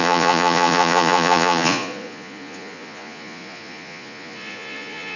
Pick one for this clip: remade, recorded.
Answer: remade